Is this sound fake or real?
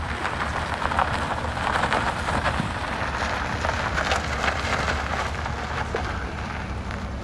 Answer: fake